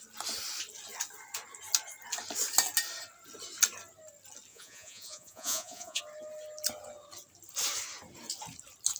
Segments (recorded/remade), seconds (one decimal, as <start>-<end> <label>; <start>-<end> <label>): 0.0-4.5 recorded; 4.5-6.0 remade; 6.0-9.0 recorded